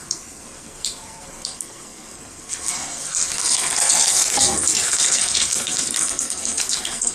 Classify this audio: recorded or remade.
remade